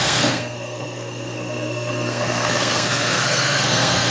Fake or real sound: fake